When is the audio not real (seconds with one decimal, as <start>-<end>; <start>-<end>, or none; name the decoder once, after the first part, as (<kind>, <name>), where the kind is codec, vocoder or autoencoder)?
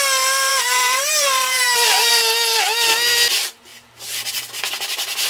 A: 0.5-2.1 (vocoder, BigVGAN v2); 3.7-4.3